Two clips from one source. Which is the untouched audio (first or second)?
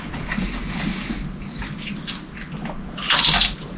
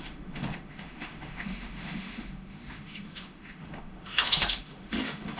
first